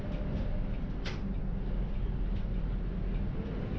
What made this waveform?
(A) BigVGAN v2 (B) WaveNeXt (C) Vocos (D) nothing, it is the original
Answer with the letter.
D